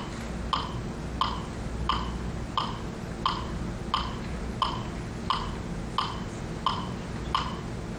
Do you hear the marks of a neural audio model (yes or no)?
no